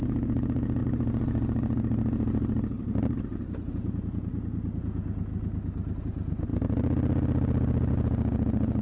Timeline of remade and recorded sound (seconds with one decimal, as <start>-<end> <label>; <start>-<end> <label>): 0.0-0.8 remade; 0.8-3.7 recorded; 3.7-4.3 remade; 4.3-4.8 recorded; 4.8-5.3 remade; 5.3-6.0 recorded; 6.0-6.5 remade; 6.5-7.9 recorded; 7.9-8.8 remade